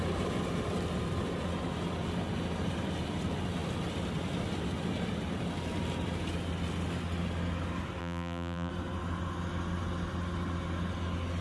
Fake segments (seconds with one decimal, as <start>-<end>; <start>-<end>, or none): 8.0-8.7